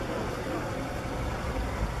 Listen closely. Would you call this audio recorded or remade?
recorded